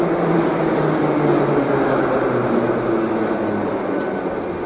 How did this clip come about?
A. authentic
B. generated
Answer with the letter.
A